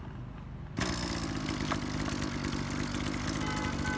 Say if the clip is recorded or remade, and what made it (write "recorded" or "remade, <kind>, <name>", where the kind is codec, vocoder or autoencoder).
recorded